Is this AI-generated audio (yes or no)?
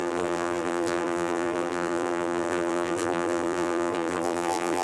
yes